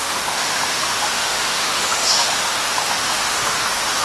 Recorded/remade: remade